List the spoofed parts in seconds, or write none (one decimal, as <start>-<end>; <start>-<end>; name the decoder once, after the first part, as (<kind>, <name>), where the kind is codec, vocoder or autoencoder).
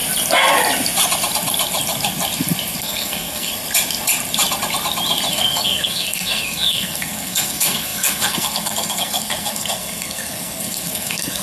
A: 2.8-3.5 (codec, SNAC); 5.3-11.4